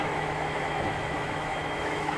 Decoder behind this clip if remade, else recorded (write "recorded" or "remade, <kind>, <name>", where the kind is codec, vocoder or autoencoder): remade, autoencoder, DAC-VAE